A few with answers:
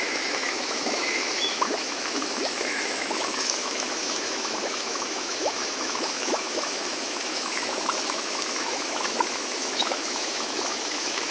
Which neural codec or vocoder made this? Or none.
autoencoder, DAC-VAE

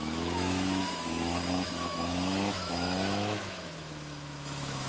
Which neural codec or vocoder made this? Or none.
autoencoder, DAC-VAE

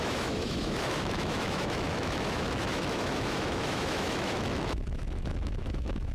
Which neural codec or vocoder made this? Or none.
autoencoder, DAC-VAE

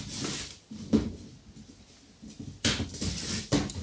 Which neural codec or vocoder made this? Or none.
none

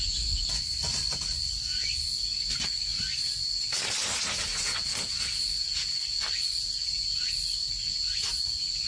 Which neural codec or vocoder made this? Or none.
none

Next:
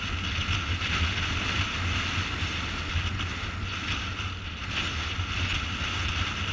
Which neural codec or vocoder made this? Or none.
none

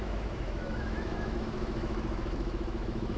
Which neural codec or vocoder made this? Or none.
autoencoder, DAC-VAE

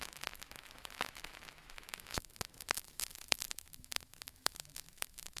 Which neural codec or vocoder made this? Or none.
autoencoder, DAC-VAE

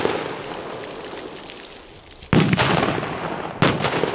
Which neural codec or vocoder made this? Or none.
none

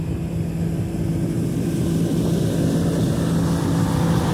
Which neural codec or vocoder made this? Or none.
none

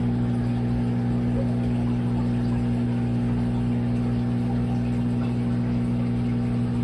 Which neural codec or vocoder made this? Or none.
none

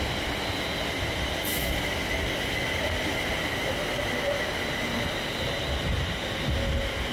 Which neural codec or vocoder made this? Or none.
none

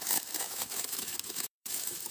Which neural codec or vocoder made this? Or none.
autoencoder, DAC-VAE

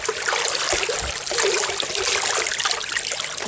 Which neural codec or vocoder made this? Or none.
none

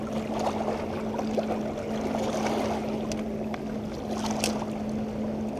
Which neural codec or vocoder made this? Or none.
none